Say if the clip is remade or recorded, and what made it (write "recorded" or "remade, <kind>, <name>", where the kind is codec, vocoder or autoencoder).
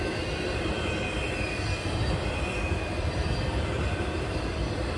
remade, vocoder, BigVGAN v2